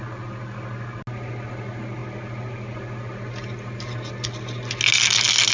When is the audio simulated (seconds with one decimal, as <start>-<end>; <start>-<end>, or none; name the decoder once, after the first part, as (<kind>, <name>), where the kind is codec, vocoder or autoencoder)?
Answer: none